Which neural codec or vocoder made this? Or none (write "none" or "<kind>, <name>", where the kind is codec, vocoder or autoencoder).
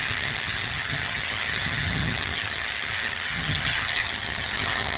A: vocoder, HiFi-GAN